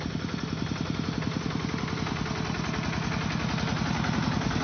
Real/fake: real